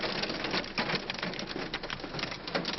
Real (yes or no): yes